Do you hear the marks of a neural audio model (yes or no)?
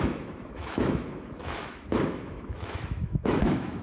yes